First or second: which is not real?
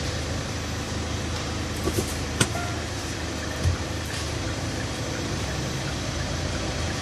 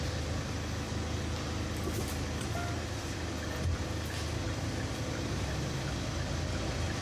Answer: first